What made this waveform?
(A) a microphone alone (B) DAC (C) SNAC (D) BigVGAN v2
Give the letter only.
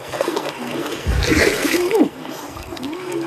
C